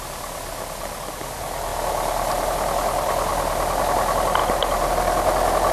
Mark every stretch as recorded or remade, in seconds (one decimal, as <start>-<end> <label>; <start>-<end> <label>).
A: 0.0-4.4 recorded; 4.4-4.9 remade; 4.9-5.7 recorded